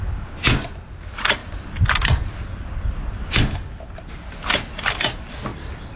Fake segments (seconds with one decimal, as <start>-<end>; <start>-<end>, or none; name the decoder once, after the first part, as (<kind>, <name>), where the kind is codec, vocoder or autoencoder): 5.5-6.0 (vocoder, BigVGAN v2)